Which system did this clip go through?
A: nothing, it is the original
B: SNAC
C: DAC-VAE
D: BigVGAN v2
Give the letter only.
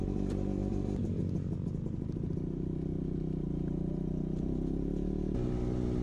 A